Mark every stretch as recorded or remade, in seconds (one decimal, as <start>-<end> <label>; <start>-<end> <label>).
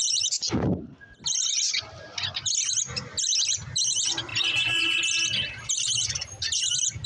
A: 0.0-7.1 recorded